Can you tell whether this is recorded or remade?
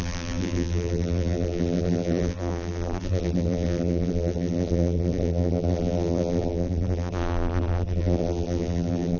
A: remade